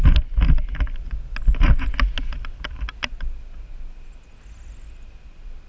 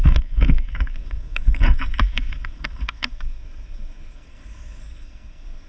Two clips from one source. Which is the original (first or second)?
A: first